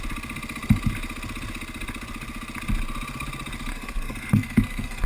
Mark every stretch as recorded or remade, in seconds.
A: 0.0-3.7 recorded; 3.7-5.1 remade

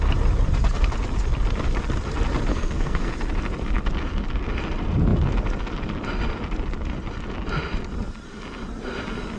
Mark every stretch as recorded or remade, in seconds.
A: 0.0-2.5 recorded; 2.5-3.1 remade; 3.1-9.4 recorded